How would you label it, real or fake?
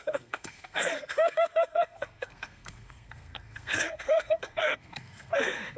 fake